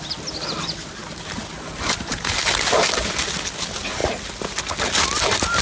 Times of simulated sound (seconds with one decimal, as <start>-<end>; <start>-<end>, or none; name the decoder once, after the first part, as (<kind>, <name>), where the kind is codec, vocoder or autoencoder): none